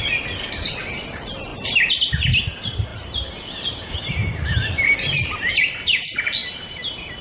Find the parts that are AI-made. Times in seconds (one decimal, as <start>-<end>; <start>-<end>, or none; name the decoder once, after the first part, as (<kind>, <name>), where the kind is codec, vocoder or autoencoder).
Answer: 2.9-5.5 (vocoder, BigVGAN v2); 6.4-7.2